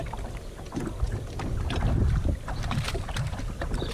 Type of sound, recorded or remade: recorded